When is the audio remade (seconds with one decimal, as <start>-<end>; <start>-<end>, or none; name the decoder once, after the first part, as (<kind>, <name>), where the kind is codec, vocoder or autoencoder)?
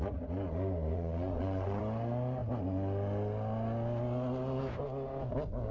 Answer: 0.9-1.8 (vocoder, Vocos)